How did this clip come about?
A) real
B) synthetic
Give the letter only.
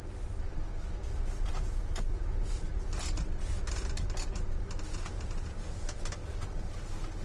A